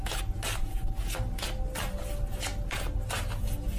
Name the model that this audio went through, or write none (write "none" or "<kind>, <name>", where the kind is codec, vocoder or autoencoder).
none